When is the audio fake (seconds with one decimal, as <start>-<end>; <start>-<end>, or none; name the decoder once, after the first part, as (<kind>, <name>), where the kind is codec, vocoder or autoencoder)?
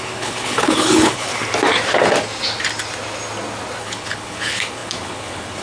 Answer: 0.0-1.3 (codec, HILCodec); 3.8-5.6